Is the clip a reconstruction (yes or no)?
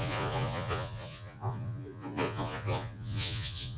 yes